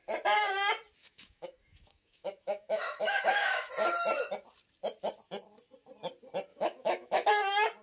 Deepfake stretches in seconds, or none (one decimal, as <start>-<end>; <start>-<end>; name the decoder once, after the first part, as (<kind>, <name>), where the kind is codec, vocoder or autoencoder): 1.0-3.7 (autoencoder, DAC-VAE); 6.5-7.3